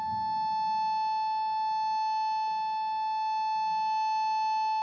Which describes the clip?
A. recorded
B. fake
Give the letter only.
A